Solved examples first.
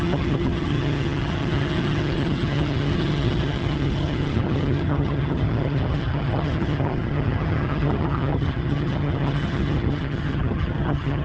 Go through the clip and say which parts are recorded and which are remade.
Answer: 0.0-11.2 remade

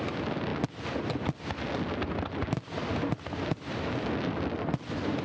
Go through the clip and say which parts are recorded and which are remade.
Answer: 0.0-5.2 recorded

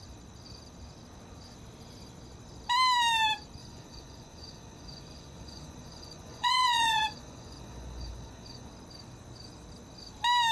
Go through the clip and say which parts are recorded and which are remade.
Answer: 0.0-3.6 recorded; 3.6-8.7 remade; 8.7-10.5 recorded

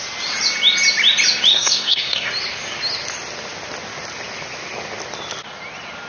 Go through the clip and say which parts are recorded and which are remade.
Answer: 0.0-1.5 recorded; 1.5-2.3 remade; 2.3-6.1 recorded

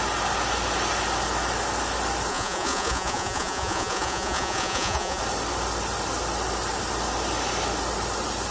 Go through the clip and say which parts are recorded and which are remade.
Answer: 0.0-2.3 recorded; 2.3-5.2 remade; 5.2-8.5 recorded